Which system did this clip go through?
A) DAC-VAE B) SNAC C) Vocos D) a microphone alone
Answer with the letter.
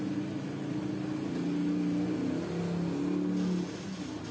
D